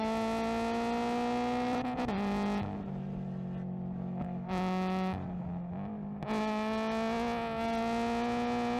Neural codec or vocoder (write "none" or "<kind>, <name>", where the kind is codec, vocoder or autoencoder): none